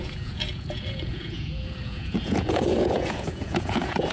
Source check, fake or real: fake